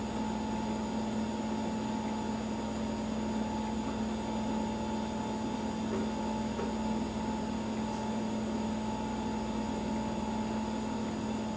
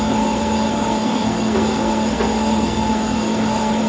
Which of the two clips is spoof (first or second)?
second